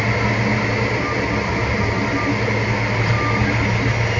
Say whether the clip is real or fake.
real